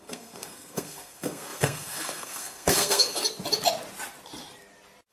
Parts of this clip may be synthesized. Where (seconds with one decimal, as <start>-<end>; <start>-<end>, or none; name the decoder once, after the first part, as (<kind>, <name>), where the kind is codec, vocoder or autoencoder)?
0.0-3.2 (codec, SNAC)

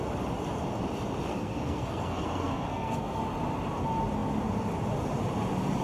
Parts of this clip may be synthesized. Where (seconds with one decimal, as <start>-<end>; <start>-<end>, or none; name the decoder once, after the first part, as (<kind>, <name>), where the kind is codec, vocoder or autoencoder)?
1.3-3.2 (codec, SNAC)

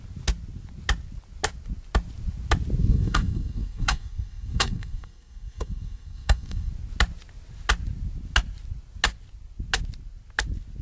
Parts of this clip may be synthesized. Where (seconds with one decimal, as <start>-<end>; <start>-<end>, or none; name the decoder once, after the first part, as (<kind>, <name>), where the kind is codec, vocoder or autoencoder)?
2.8-6.7 (codec, SNAC)

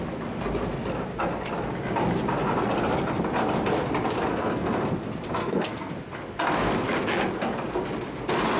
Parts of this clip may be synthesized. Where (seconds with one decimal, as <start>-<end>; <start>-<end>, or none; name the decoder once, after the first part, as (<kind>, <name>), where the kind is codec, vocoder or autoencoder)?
4.3-4.8 (codec, SNAC); 5.4-5.9

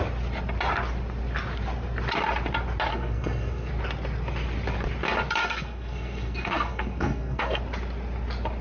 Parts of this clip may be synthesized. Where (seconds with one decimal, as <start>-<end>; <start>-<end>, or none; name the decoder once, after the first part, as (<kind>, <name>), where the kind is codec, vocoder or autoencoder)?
2.9-3.7 (codec, SNAC); 5.4-7.6

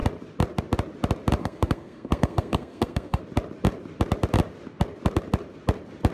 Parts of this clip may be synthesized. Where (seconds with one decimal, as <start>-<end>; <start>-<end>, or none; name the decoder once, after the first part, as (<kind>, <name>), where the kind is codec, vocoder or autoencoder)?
1.4-3.2 (codec, SNAC)

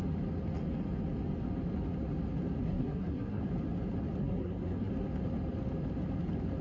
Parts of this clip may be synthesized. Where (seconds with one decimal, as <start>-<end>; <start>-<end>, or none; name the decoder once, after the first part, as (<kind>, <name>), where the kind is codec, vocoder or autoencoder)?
2.6-3.4 (codec, SNAC); 4.2-4.9

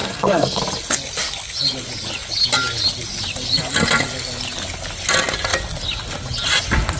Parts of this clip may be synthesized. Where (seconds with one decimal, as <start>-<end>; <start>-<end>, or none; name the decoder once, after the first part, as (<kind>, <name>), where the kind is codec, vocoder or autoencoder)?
0.0-0.6 (codec, SNAC)